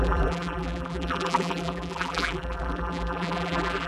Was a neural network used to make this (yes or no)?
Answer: yes